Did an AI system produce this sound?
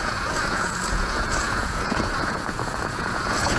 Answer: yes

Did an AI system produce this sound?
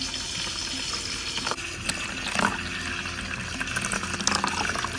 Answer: no